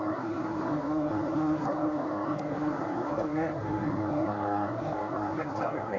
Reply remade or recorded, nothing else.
remade